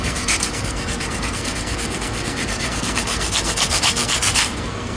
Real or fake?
fake